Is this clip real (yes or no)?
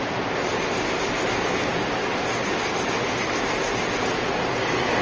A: yes